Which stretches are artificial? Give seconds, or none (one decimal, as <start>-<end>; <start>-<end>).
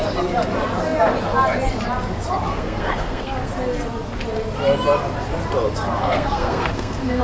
2.5-3.5; 6.0-7.2